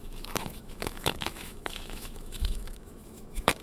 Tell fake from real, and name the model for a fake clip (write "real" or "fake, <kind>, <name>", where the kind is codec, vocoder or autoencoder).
fake, autoencoder, DAC-VAE